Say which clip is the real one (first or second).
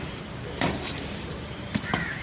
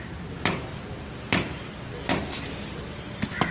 second